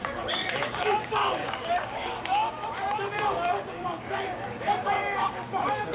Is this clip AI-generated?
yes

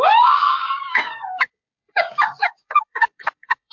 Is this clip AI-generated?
yes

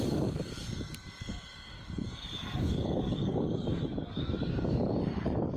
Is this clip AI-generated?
yes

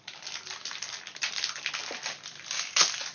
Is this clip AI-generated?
no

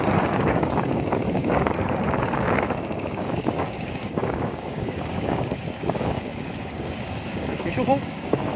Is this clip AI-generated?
yes